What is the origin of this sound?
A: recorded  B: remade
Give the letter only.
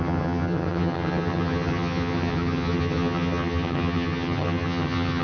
B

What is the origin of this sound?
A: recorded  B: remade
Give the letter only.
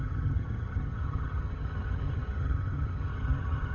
B